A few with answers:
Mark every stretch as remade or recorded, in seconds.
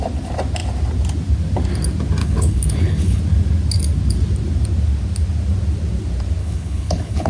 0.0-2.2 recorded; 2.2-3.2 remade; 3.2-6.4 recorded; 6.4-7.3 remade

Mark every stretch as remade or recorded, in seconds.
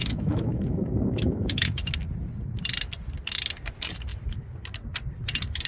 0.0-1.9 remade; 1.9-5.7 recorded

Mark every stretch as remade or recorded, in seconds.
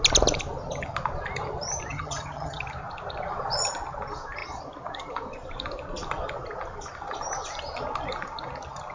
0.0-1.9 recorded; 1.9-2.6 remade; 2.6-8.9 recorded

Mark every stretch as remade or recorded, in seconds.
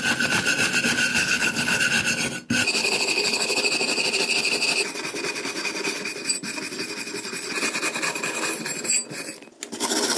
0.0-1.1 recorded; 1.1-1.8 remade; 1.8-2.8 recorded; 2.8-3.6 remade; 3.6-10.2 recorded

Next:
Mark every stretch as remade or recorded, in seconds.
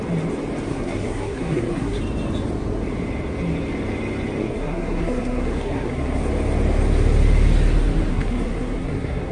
0.0-0.7 recorded; 0.7-2.0 remade; 2.0-4.4 recorded; 4.4-6.2 remade; 6.2-8.1 recorded; 8.1-9.3 remade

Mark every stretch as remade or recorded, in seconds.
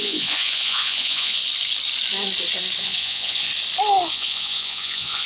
0.0-1.4 remade; 1.4-2.8 recorded; 2.8-3.5 remade; 3.5-4.1 recorded; 4.1-5.3 remade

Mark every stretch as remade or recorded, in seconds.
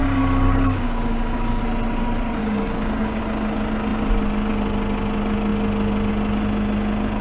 0.0-1.6 remade; 1.6-2.4 recorded; 2.4-3.2 remade; 3.2-7.2 recorded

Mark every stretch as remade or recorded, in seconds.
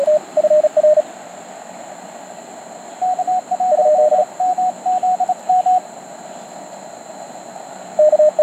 0.0-8.4 recorded